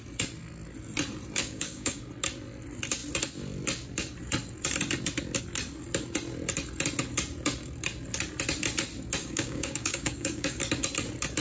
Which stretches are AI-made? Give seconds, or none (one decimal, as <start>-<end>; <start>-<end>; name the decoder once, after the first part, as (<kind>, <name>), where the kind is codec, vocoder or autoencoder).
1.4-2.0 (codec, DAC); 9.2-10.6